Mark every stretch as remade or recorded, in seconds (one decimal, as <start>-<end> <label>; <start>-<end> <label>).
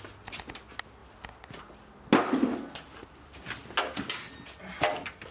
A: 0.0-5.3 recorded